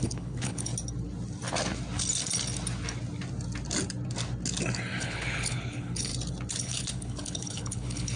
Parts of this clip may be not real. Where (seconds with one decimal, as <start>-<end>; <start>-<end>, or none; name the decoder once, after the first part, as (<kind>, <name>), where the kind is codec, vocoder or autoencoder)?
0.0-0.7 (codec, HILCodec); 5.0-6.1; 6.6-8.2